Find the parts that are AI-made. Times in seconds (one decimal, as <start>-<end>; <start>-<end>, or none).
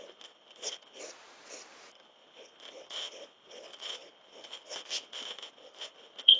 0.0-1.0; 1.9-6.4